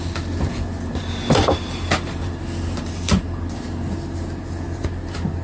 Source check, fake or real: real